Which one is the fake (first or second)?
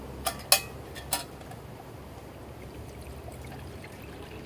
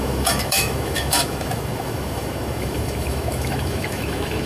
second